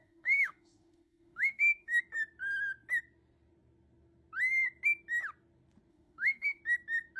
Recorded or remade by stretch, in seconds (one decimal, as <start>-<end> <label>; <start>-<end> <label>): 0.0-2.0 remade; 2.0-5.9 recorded; 5.9-6.6 remade; 6.6-7.2 recorded